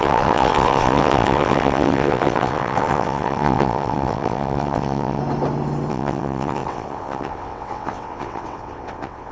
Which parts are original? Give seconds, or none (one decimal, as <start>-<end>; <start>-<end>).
5.2-5.9